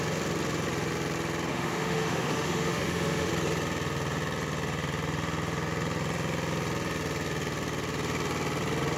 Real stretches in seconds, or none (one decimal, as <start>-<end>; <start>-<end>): 0.0-1.5; 3.3-9.0